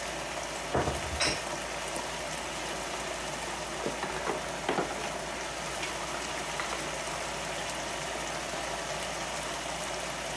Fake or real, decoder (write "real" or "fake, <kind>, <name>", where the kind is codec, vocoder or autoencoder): real